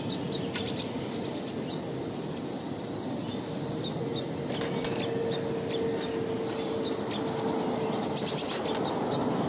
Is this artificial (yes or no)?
no